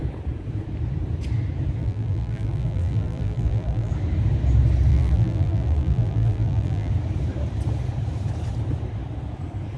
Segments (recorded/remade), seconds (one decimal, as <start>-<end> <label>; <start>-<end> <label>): 0.0-1.8 recorded; 1.8-3.9 remade; 3.9-4.9 recorded; 4.9-6.9 remade; 6.9-9.8 recorded